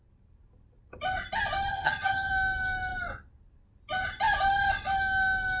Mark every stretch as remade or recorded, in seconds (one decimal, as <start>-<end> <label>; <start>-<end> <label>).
0.0-1.7 recorded; 1.7-2.3 remade; 2.3-5.6 recorded